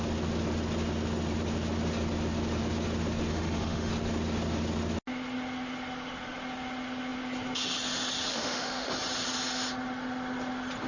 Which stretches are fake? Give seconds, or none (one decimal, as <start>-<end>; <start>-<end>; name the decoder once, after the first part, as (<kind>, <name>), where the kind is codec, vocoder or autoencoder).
3.3-3.9 (autoencoder, DAC-VAE); 8.3-8.9